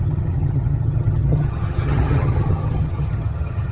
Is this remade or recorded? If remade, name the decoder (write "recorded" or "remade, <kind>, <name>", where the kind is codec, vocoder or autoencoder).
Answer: remade, vocoder, HiFi-GAN